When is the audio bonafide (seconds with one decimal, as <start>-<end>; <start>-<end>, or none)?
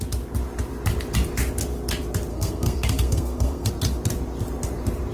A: 0.0-2.3; 3.7-5.1